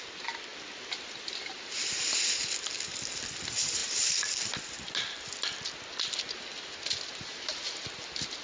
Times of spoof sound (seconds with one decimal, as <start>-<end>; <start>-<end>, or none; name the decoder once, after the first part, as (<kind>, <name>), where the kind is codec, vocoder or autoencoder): none